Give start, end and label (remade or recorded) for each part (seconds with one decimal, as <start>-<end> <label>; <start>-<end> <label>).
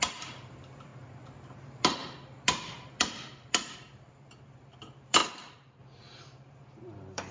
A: 0.0-0.9 remade; 0.9-1.6 recorded; 1.6-2.0 remade; 2.0-3.0 recorded; 3.0-7.3 remade